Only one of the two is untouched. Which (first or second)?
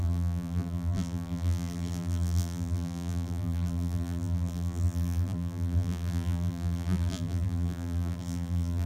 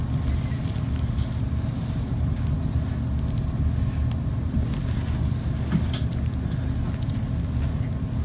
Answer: second